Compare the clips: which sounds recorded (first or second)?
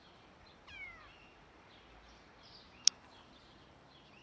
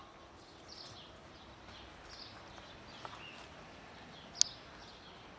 second